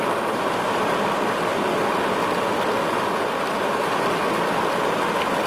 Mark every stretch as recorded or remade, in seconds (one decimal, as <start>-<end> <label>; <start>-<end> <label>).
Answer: 0.0-5.5 recorded